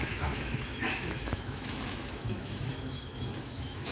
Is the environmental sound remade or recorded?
remade